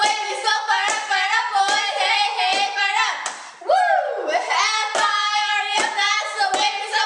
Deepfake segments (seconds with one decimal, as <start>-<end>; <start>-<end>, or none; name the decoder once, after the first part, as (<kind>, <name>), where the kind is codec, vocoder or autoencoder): none